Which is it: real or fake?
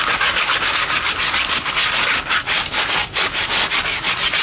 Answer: real